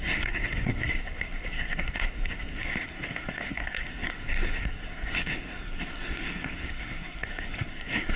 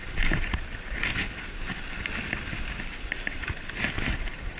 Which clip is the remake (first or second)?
first